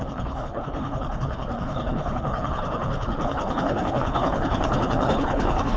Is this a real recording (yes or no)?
no